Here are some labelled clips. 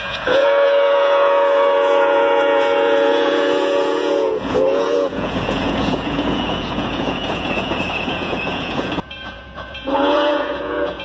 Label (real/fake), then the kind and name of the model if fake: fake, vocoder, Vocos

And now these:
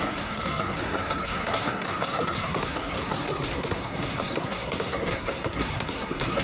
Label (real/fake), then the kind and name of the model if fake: fake, codec, SNAC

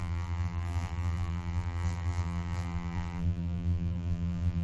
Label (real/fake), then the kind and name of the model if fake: fake, vocoder, BigVGAN v2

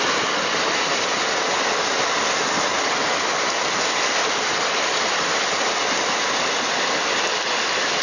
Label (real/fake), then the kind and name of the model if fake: real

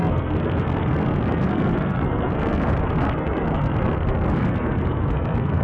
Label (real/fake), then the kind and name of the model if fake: fake, codec, SNAC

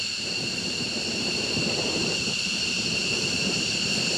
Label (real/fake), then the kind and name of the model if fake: fake, vocoder, BigVGAN v2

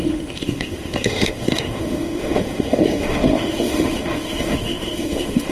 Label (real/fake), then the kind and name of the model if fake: fake, autoencoder, DAC-VAE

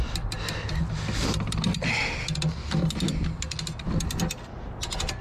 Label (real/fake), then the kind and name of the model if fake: real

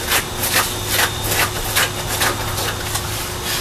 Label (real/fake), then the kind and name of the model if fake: real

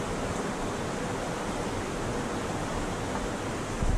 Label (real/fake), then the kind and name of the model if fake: real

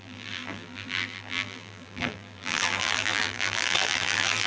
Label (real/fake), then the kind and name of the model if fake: fake, vocoder, BigVGAN v2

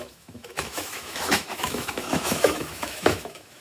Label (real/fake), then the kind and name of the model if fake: fake, autoencoder, DAC-VAE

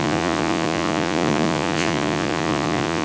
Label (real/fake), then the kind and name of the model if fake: fake, vocoder, Vocos